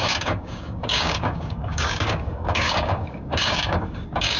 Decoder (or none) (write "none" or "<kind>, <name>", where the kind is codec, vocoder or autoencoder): codec, DAC